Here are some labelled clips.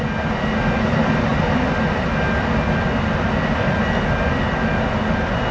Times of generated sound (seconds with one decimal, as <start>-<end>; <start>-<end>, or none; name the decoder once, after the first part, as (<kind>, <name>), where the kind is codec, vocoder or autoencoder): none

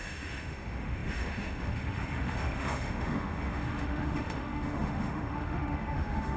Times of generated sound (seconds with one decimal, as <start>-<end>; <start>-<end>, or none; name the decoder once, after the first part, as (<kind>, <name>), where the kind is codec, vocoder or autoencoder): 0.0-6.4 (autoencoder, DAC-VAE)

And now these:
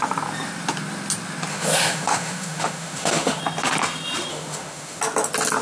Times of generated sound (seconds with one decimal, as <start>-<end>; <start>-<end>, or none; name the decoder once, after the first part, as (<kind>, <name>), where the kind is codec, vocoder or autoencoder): 1.5-3.4 (autoencoder, DAC-VAE); 4.3-5.0